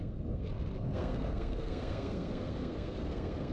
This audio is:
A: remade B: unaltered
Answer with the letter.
A